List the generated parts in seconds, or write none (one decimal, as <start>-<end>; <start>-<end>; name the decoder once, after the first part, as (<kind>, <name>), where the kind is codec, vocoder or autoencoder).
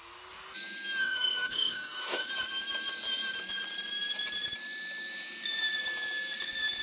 1.0-2.3 (autoencoder, DAC-VAE)